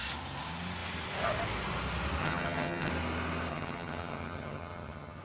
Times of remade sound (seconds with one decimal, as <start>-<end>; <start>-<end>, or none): 2.2-2.9; 3.5-5.2